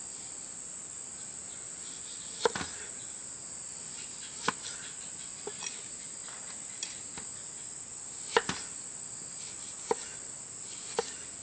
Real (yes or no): yes